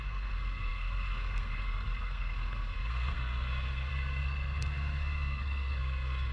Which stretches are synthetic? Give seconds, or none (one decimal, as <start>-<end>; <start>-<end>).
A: 0.0-6.3